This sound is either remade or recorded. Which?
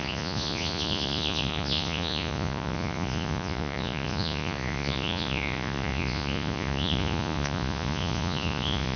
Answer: remade